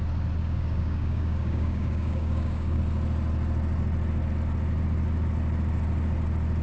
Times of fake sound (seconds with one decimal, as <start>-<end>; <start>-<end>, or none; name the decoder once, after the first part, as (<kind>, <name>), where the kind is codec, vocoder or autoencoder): 0.4-2.8 (codec, DAC)

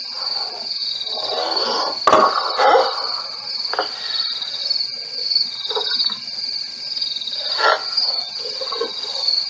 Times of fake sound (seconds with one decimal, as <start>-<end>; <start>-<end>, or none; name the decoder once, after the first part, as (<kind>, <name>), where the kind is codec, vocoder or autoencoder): none